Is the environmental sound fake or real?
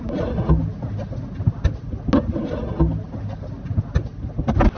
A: real